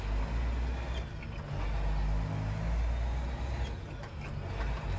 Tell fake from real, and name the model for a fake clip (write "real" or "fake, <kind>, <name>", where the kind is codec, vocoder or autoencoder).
real